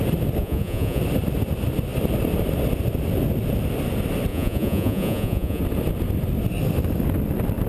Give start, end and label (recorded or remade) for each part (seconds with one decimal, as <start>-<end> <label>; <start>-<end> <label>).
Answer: 0.0-0.4 recorded; 0.4-1.0 remade; 1.0-4.3 recorded; 4.3-5.6 remade; 5.6-7.7 recorded